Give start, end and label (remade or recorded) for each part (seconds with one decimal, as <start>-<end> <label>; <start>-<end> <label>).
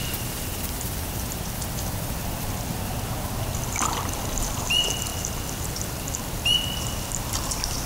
0.0-7.9 recorded